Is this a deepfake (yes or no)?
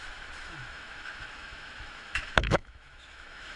yes